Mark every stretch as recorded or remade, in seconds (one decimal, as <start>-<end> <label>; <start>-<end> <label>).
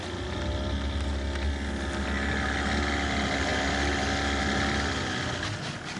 0.0-6.0 recorded